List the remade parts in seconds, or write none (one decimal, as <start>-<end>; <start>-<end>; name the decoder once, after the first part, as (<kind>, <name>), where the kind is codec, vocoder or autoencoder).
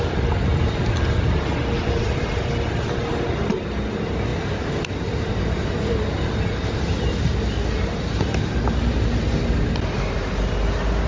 none